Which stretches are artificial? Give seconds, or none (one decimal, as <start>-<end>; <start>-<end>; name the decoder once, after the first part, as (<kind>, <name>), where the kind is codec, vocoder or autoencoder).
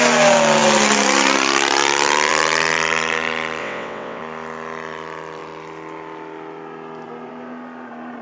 3.6-4.2 (vocoder, WaveNeXt)